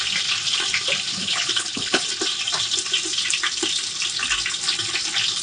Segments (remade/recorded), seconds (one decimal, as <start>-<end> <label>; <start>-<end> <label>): 0.0-1.1 recorded; 1.1-2.0 remade; 2.0-5.4 recorded